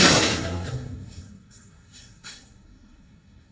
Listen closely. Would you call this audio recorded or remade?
remade